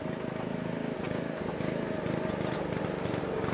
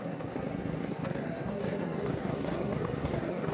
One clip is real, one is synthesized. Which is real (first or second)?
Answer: first